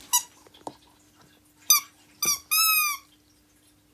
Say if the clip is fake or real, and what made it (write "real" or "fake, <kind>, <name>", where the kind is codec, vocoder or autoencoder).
real